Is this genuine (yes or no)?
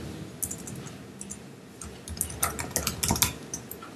yes